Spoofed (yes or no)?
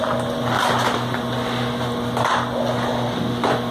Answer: no